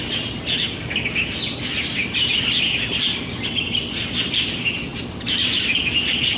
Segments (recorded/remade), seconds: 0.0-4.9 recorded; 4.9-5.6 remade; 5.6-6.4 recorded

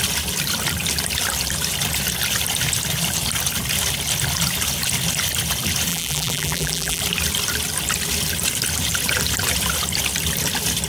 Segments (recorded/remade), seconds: 0.0-5.9 recorded; 5.9-7.0 remade; 7.0-10.9 recorded

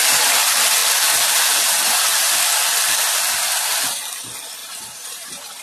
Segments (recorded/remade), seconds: 0.0-2.1 recorded; 2.1-2.6 remade; 2.6-4.6 recorded; 4.6-5.6 remade

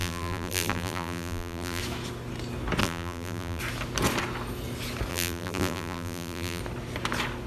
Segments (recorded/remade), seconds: 0.0-1.8 remade; 1.8-2.8 recorded; 2.8-3.6 remade; 3.6-5.1 recorded; 5.1-6.6 remade; 6.6-7.5 recorded